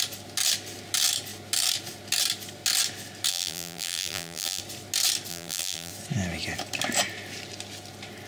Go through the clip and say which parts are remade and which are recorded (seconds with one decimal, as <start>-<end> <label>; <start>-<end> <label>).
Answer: 0.0-3.3 recorded; 3.3-4.6 remade; 4.6-5.3 recorded; 5.3-5.9 remade; 5.9-8.3 recorded